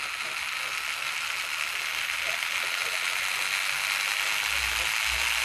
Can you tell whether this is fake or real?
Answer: real